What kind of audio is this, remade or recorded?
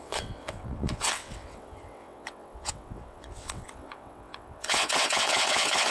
remade